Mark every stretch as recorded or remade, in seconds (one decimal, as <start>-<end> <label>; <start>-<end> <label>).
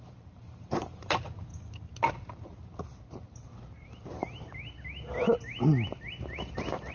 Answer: 0.0-1.5 remade; 1.5-2.1 recorded; 2.1-2.7 remade; 2.7-3.2 recorded; 3.2-4.2 remade; 4.2-6.5 recorded; 6.5-6.9 remade